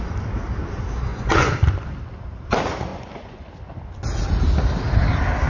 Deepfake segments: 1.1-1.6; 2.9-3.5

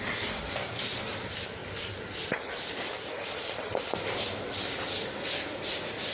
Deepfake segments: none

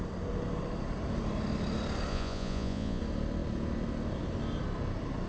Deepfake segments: 2.1-3.0

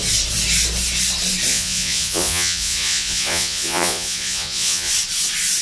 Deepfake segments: 1.5-4.9

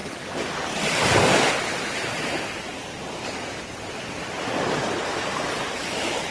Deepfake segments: 0.0-1.5